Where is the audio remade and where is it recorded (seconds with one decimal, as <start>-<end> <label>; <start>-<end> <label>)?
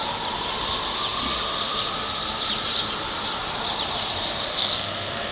0.0-4.5 recorded; 4.5-5.3 remade